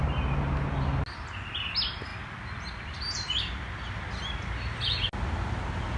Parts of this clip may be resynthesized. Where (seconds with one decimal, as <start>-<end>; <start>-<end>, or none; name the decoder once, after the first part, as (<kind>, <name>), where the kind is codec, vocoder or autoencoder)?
none